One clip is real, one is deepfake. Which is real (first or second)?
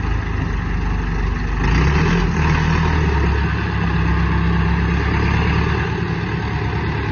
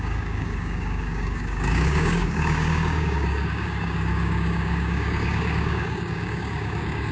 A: first